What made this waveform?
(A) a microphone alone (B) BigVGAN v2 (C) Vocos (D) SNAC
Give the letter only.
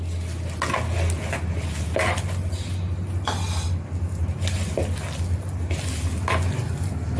A